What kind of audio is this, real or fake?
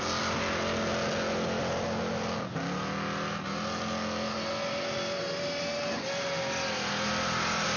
real